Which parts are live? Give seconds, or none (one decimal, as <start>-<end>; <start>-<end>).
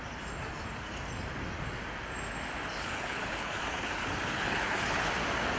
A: 0.0-2.7; 5.1-5.6